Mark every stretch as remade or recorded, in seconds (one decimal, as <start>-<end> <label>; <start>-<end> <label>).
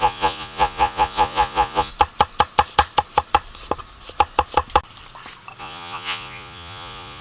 0.0-1.9 remade; 1.9-5.6 recorded; 5.6-7.2 remade